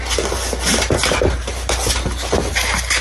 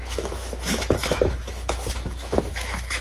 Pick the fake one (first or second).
second